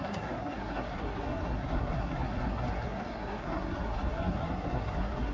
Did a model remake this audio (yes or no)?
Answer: yes